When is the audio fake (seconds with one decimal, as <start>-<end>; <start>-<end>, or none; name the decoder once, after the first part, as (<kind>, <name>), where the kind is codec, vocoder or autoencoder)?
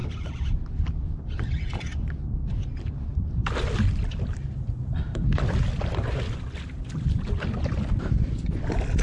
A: none